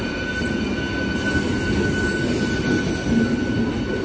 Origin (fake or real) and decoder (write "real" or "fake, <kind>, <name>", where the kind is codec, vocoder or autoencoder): real